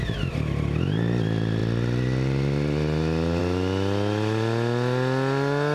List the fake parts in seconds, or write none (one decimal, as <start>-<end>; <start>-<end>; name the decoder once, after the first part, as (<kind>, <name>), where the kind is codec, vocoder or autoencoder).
none